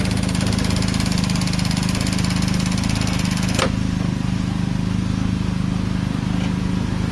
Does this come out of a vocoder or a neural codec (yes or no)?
no